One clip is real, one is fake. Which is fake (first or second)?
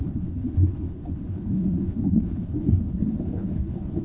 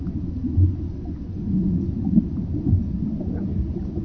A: first